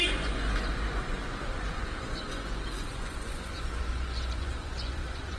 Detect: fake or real fake